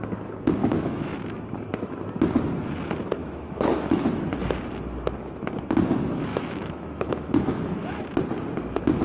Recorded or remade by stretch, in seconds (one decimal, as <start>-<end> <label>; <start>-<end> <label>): 0.0-0.6 recorded; 0.6-1.2 remade; 1.2-3.2 recorded; 3.2-4.2 remade; 4.2-6.3 recorded; 6.3-8.0 remade; 8.0-9.0 recorded